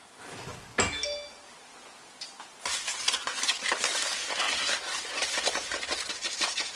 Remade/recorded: recorded